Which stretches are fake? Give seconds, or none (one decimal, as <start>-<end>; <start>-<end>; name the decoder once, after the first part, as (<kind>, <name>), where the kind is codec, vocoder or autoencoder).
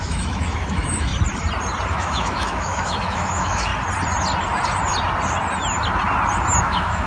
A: 0.0-1.1 (autoencoder, DAC-VAE); 1.9-3.7; 6.6-7.1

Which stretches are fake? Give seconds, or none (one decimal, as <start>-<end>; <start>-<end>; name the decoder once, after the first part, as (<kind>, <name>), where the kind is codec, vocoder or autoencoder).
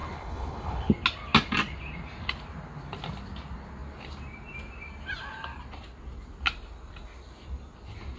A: 0.0-0.9 (codec, HILCodec)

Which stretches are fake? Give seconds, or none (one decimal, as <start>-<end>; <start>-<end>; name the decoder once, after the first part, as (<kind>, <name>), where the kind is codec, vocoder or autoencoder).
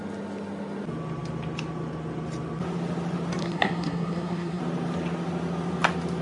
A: 3.4-4.6 (codec, SNAC)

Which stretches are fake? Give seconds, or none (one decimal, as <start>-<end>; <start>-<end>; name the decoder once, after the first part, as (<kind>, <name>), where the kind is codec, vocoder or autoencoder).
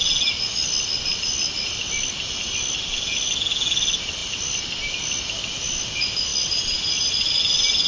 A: none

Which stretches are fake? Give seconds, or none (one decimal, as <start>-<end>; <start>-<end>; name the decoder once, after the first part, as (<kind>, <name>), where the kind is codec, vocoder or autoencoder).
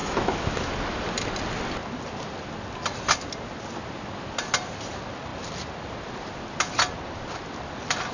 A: 0.0-0.7 (autoencoder, DAC-VAE)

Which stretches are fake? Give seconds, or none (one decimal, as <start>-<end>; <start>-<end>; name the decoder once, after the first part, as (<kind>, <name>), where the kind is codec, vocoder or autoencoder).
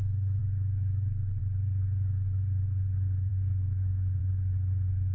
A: 3.3-4.2 (autoencoder, DAC-VAE)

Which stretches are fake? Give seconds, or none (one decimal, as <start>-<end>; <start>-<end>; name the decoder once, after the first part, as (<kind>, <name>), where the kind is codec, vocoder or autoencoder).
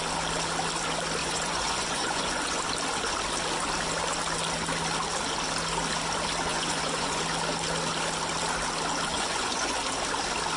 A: 1.2-2.6 (vocoder, Vocos); 6.5-7.2; 9.1-9.8